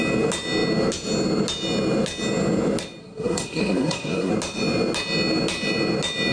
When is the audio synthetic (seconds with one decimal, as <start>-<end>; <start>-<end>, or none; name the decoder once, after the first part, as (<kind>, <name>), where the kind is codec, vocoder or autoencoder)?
3.0-4.3 (codec, SNAC)